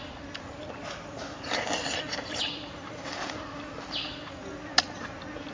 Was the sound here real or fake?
real